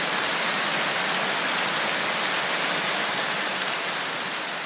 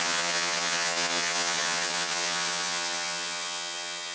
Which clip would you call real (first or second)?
first